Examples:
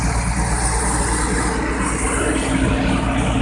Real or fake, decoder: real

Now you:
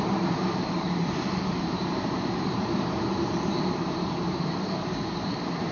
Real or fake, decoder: fake, vocoder, BigVGAN v2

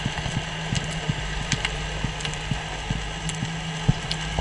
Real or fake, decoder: real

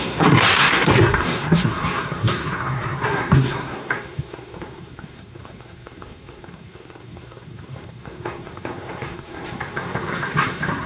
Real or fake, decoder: fake, codec, SNAC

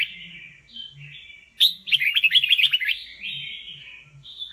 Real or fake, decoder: real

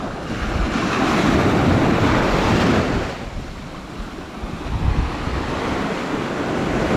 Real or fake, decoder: real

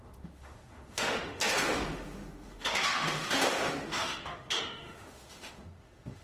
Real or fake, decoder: fake, autoencoder, DAC-VAE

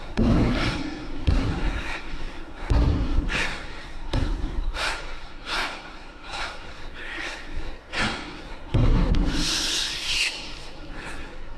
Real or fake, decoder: fake, codec, SNAC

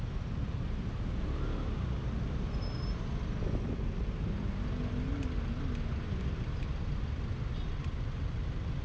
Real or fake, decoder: real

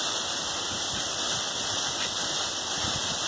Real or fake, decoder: real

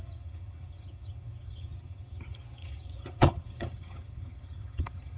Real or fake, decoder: fake, vocoder, HiFi-GAN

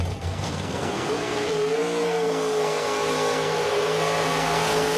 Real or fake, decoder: fake, codec, SNAC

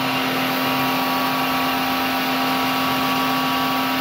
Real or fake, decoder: real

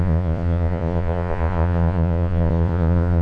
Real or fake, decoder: fake, vocoder, Vocos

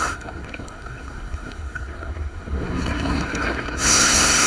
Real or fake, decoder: fake, codec, SNAC